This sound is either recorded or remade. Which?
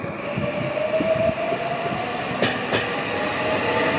recorded